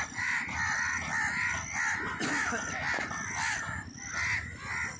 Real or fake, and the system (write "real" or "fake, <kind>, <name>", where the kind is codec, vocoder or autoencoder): real